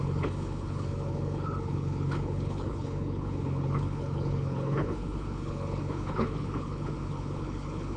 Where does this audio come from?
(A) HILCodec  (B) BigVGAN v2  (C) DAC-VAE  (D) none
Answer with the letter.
A